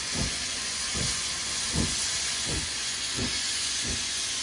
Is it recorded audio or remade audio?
remade